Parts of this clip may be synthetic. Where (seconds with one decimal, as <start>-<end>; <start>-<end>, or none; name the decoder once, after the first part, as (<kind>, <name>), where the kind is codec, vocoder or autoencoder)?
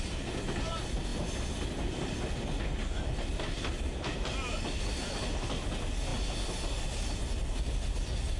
none